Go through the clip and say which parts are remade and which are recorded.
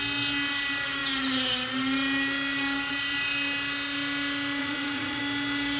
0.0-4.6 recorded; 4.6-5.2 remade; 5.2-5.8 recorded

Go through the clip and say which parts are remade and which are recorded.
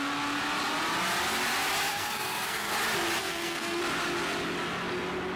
0.0-1.9 recorded; 1.9-2.7 remade; 2.7-3.2 recorded; 3.2-3.8 remade; 3.8-5.4 recorded